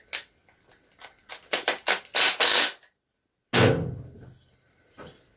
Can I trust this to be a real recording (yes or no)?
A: yes